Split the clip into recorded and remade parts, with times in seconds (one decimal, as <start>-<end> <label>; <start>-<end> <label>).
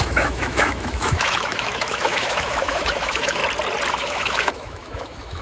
0.0-3.4 remade; 3.4-3.9 recorded; 3.9-5.4 remade